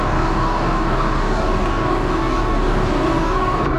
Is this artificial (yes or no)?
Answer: yes